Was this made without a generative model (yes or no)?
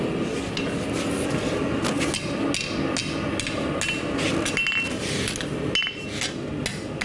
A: yes